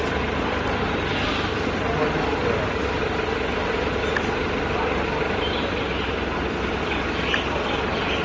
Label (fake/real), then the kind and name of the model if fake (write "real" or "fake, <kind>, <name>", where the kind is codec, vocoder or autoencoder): real